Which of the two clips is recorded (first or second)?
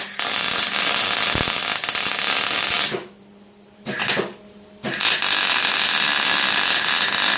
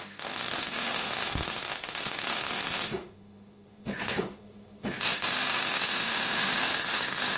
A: first